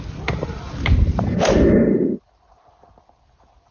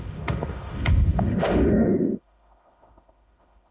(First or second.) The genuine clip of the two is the first